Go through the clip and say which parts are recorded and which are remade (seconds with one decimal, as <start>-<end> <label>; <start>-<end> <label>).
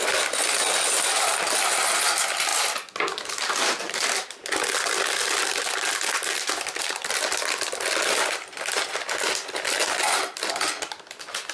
0.0-11.5 recorded